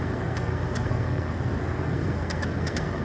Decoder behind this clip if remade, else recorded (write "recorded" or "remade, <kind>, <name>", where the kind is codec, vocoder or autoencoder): remade, codec, SNAC